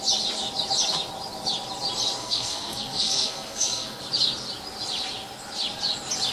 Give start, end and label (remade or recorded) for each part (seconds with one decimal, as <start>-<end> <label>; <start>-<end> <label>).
0.0-2.2 recorded; 2.2-4.0 remade; 4.0-6.3 recorded